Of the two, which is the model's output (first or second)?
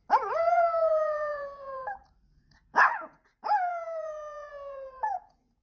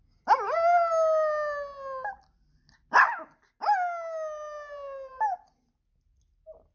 first